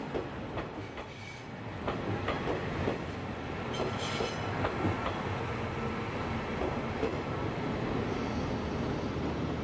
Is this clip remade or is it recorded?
recorded